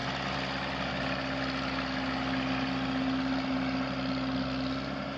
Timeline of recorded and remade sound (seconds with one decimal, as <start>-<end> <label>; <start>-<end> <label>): 0.0-5.2 recorded